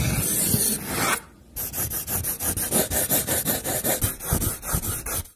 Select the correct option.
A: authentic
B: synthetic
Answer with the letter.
A